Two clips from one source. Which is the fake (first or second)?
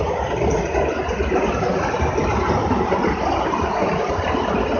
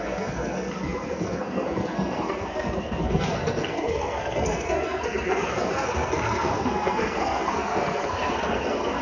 second